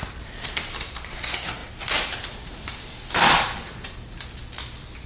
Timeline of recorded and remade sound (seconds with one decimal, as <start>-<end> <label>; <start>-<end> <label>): 0.0-5.1 recorded